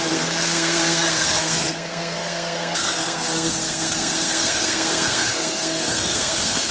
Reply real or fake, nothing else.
fake